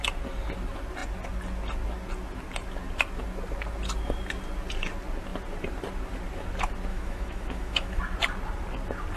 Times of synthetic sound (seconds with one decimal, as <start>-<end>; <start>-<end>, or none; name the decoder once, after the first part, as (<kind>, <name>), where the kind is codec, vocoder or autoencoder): 6.9-8.0 (autoencoder, DAC-VAE)